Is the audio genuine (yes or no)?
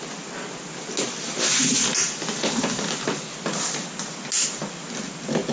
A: yes